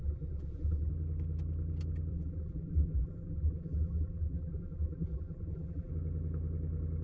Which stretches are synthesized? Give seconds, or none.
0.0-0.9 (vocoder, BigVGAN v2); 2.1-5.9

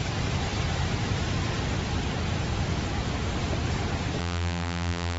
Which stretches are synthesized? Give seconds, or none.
4.2-5.2 (vocoder, BigVGAN v2)

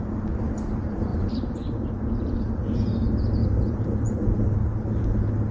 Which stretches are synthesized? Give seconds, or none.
1.1-2.1 (vocoder, BigVGAN v2); 3.4-4.7

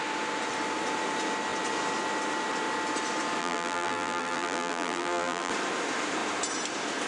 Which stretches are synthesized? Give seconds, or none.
3.4-5.5 (vocoder, BigVGAN v2)

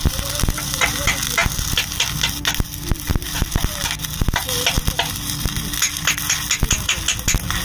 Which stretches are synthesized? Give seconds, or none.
none

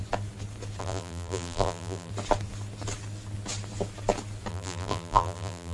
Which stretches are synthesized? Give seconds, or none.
0.8-2.1 (vocoder, BigVGAN v2); 4.5-5.7

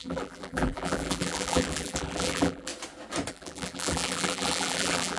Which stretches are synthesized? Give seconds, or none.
0.0-2.7 (vocoder, BigVGAN v2); 3.3-5.2